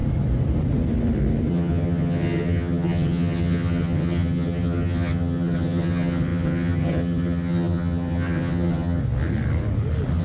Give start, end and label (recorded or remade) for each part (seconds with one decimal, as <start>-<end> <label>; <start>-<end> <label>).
0.0-1.5 recorded; 1.5-9.0 remade; 9.0-10.2 recorded